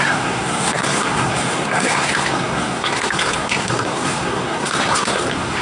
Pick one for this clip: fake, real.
fake